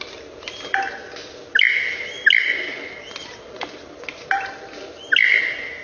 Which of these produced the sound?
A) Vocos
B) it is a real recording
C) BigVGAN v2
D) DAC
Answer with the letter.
B